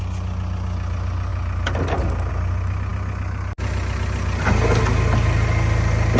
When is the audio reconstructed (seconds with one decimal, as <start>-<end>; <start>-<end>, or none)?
none